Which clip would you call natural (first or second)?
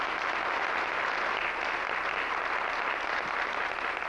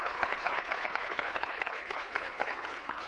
first